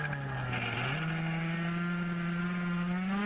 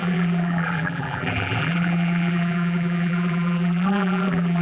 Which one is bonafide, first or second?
first